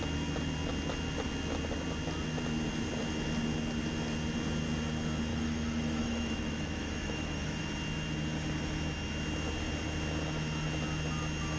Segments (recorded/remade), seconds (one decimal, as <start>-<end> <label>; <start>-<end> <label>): 0.0-5.3 recorded; 5.3-7.6 remade; 7.6-11.6 recorded